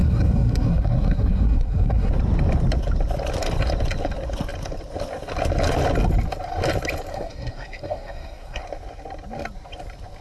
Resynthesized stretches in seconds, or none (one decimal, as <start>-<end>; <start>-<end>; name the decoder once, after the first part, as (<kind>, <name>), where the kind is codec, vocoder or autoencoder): 0.0-2.1 (codec, SNAC); 7.1-8.6